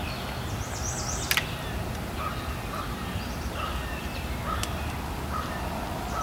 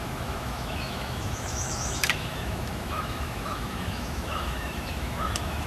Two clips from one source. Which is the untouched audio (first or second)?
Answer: first